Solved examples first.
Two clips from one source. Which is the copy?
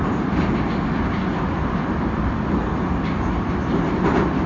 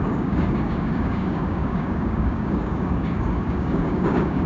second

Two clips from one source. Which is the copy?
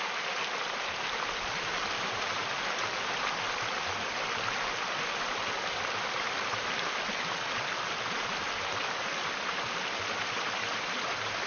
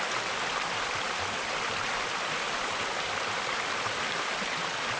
second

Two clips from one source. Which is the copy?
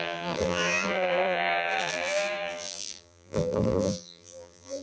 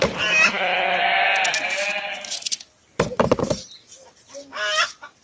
first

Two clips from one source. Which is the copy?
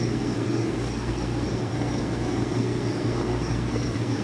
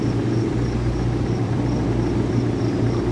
first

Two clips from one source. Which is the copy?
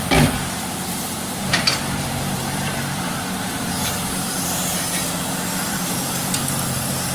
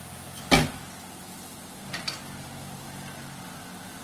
first